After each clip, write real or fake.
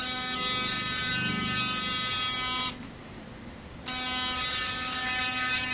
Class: real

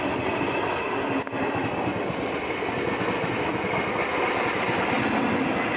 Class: real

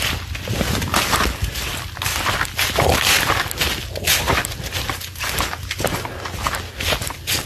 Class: real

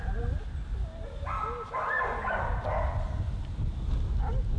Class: real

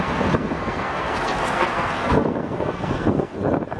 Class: fake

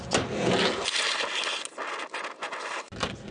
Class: real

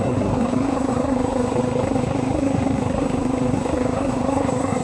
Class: fake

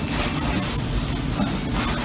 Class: real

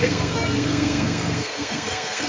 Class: fake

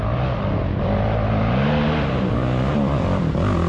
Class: real